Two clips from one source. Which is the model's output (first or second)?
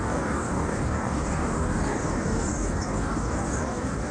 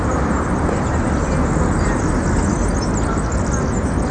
first